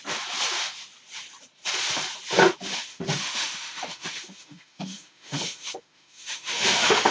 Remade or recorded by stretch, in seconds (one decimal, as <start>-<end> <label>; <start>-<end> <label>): 0.0-2.7 recorded; 2.7-7.1 remade